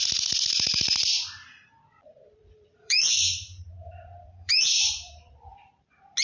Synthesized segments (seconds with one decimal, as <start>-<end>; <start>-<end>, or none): 2.1-5.7